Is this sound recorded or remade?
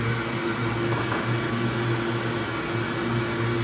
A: recorded